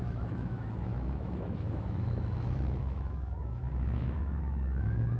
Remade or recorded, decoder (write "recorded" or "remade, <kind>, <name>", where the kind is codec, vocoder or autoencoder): remade, autoencoder, DAC-VAE